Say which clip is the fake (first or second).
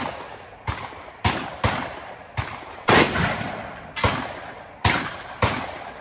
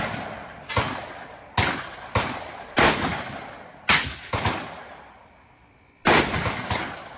first